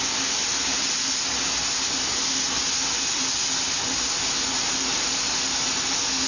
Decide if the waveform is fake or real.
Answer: real